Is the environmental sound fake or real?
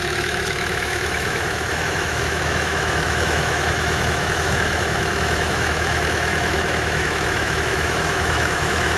fake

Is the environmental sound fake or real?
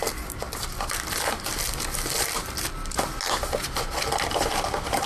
real